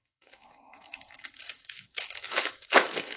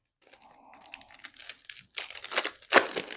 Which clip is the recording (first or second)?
second